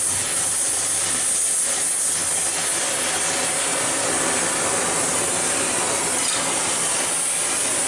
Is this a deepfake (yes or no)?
no